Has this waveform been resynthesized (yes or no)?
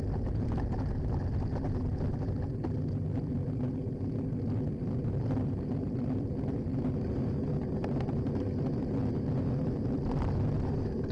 no